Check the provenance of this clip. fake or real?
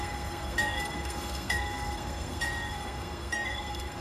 fake